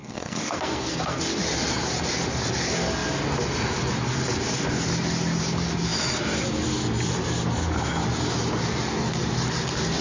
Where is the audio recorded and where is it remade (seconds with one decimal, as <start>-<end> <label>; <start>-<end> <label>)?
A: 0.0-1.2 remade; 1.2-10.0 recorded